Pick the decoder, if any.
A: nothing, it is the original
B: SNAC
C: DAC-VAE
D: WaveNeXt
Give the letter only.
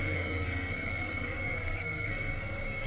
B